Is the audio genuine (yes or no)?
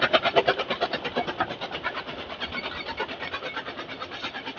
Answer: yes